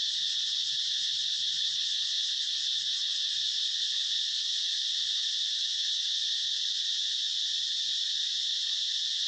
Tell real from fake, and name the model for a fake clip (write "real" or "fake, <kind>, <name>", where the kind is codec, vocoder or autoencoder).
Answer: real